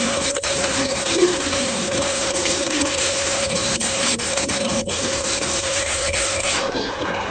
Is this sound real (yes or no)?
no